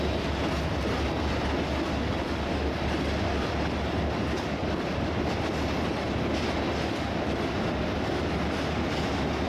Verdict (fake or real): real